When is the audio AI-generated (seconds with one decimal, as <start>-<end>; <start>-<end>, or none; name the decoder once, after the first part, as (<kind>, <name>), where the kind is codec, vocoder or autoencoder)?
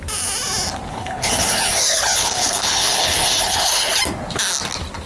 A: 0.9-4.0 (codec, HILCodec)